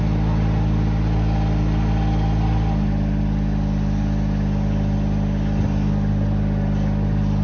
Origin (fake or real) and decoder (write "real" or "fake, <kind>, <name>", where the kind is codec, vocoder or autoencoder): real